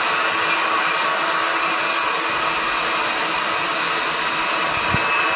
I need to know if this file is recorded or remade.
recorded